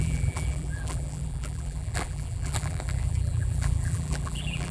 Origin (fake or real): fake